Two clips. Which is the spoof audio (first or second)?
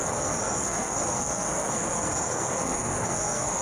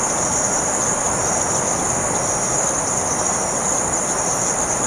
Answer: first